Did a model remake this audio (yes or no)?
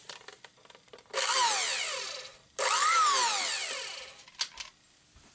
no